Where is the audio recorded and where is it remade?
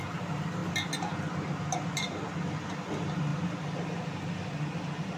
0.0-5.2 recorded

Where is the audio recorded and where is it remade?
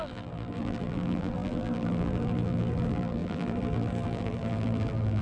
0.0-5.2 remade